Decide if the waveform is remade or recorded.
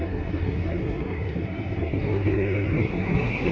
remade